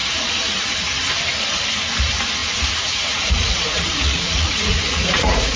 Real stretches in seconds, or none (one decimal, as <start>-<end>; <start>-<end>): 0.0-2.4